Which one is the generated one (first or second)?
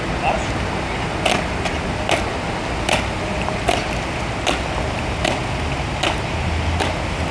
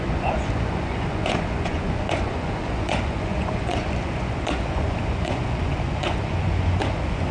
second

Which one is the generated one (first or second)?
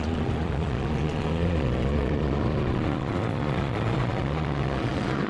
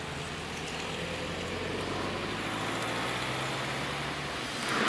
first